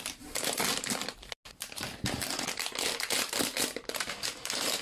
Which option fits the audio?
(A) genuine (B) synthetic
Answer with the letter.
A